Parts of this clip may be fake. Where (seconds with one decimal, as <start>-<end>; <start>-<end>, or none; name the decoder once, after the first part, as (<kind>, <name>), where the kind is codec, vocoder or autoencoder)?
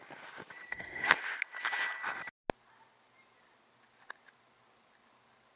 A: 0.7-1.2 (codec, SNAC)